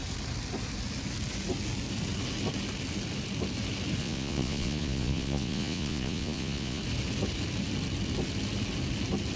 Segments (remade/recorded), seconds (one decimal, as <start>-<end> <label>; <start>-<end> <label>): 0.0-4.0 recorded; 4.0-6.8 remade; 6.8-9.4 recorded